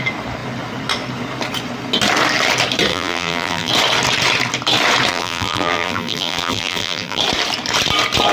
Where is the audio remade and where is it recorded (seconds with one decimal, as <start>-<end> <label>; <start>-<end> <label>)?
0.0-2.9 recorded; 2.9-3.7 remade; 3.7-5.1 recorded; 5.1-7.2 remade; 7.2-8.3 recorded